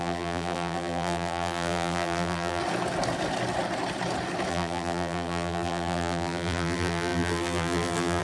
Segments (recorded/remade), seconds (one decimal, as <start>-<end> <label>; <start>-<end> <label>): 0.0-2.6 remade; 2.6-4.5 recorded; 4.5-8.2 remade